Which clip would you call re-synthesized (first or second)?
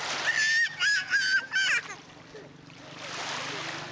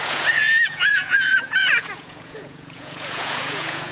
second